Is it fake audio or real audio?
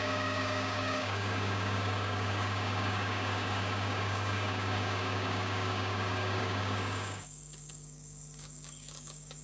fake